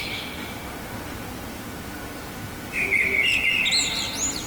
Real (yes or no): yes